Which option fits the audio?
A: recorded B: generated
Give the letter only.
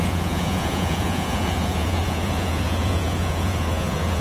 B